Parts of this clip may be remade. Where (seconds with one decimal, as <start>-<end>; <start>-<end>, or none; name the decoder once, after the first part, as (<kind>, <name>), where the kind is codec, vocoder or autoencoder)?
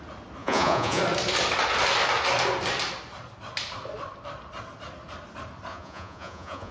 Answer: 0.4-1.0 (vocoder, Vocos); 5.7-6.7